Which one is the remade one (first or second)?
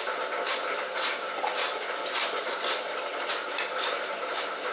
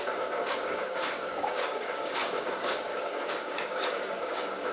second